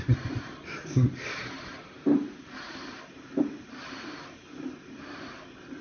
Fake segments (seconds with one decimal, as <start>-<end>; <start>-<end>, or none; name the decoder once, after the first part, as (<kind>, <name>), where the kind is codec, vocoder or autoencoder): 0.0-5.8 (vocoder, BigVGAN v2)